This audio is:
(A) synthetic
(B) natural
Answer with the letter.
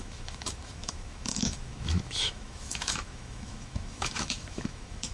A